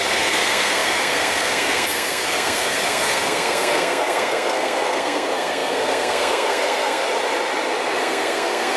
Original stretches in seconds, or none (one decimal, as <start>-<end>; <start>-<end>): 7.0-8.0